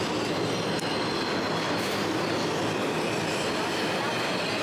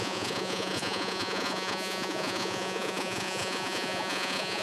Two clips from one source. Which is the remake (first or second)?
second